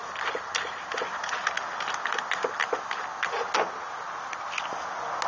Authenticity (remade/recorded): recorded